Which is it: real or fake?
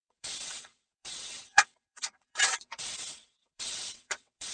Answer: fake